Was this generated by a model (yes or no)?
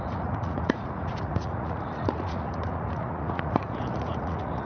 yes